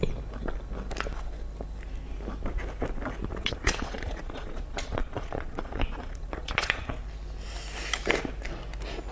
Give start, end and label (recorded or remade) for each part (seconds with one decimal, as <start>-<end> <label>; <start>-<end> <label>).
0.0-3.4 recorded; 3.4-6.9 remade; 6.9-9.1 recorded